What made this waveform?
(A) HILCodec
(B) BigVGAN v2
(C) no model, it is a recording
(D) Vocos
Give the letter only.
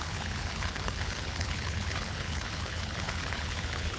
A